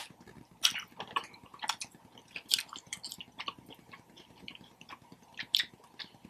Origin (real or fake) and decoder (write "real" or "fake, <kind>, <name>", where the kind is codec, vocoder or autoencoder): fake, vocoder, BigVGAN v2